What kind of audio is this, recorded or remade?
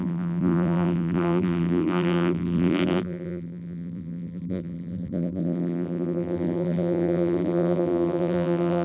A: remade